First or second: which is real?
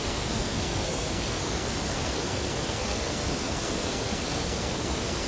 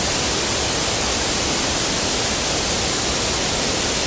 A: second